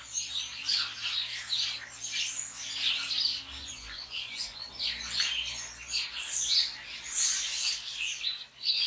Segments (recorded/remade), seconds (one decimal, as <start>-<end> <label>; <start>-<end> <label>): 0.0-3.6 recorded; 3.6-4.7 remade; 4.7-8.9 recorded